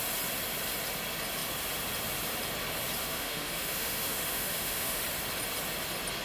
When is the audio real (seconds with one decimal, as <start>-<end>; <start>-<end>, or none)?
0.0-3.0; 5.0-6.2